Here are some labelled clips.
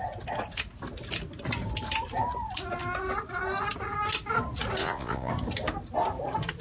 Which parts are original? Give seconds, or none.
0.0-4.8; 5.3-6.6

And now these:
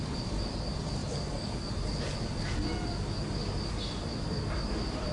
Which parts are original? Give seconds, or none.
1.0-4.1

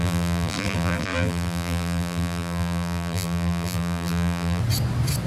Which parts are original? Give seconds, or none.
4.6-5.3